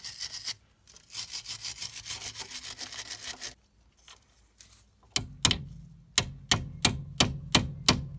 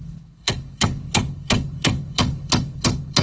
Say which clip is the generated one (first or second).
second